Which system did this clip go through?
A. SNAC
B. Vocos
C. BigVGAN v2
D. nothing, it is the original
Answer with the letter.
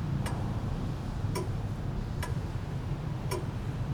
C